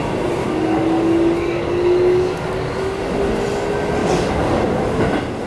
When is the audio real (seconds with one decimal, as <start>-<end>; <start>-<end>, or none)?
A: 0.0-0.4; 3.2-4.0; 4.8-5.5

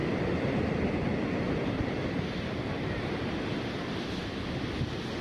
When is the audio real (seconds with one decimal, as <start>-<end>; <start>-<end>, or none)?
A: 0.0-5.2

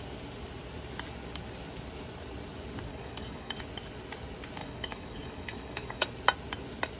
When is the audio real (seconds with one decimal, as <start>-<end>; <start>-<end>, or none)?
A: 0.0-2.9; 3.6-4.6; 6.1-7.0

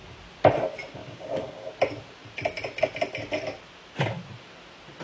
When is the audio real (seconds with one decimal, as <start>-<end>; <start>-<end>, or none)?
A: 0.0-1.0; 1.7-5.0

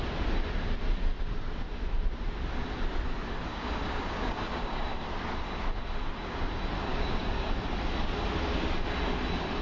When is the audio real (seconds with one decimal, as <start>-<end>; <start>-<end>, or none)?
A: 0.0-3.5; 4.8-6.9; 7.5-9.6